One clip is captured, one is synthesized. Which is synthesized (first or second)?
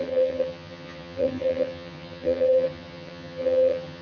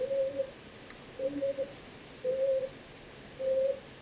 first